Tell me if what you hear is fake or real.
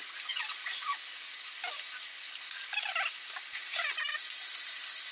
real